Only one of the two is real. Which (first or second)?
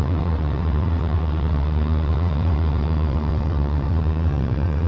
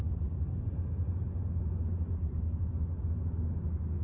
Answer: second